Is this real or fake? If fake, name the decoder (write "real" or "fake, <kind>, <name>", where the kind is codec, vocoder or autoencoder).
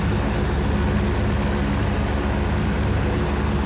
real